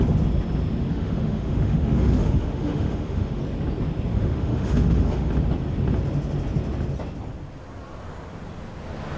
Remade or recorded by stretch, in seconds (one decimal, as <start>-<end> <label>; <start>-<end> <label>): 0.0-0.9 recorded; 0.9-3.4 remade; 3.4-4.1 recorded; 4.1-5.3 remade; 5.3-9.2 recorded